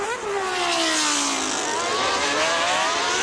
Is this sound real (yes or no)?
yes